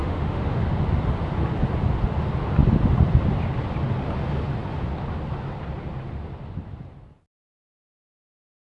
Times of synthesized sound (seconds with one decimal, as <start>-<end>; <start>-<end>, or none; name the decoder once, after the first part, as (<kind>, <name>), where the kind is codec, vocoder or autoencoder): 0.0-0.6 (autoencoder, DAC-VAE)